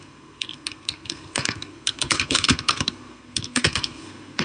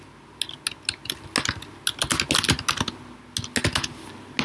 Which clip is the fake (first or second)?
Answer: first